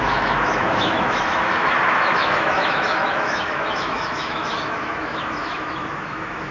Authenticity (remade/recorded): remade